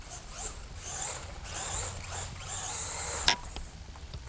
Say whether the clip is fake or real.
real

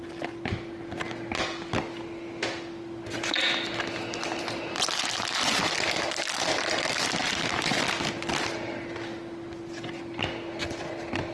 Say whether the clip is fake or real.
real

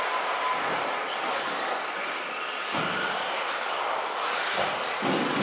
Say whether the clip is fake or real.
real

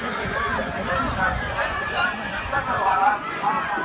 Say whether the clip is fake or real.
fake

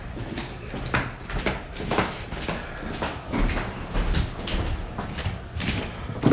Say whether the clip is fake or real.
real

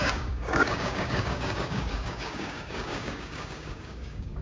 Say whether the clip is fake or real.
fake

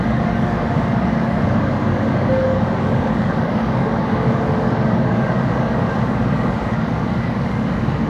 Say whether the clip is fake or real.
fake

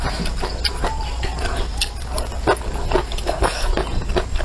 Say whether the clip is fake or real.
real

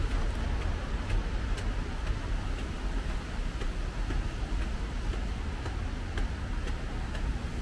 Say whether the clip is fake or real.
real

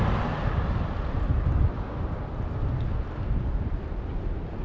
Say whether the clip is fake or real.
real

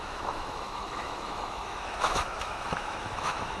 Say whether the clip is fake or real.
fake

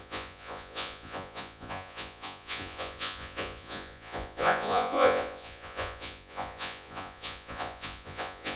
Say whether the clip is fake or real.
fake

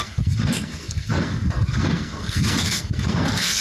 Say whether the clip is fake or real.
fake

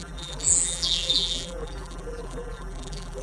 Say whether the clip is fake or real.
fake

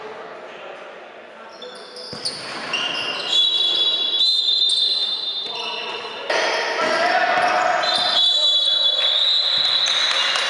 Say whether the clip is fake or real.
real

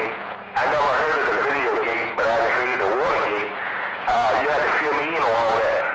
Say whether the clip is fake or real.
fake